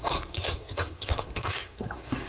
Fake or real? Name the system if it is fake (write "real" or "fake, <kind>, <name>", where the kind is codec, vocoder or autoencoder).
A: fake, codec, SNAC